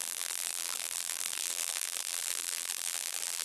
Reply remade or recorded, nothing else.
remade